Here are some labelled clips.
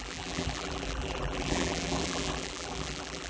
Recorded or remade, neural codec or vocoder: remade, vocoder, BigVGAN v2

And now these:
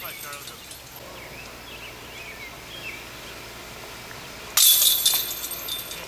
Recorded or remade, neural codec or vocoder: recorded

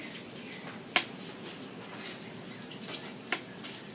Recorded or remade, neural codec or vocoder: recorded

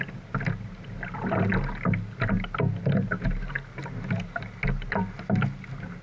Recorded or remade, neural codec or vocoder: recorded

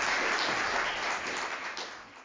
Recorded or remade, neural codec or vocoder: recorded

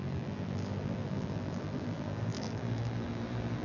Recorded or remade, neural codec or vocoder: remade, vocoder, BigVGAN v2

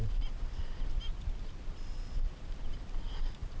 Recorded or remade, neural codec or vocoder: remade, vocoder, BigVGAN v2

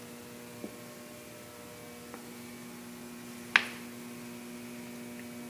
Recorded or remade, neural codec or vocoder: recorded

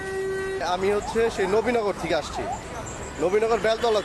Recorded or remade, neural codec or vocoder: recorded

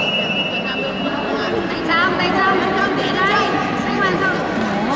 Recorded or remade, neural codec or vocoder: recorded